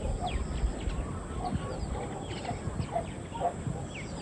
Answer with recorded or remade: recorded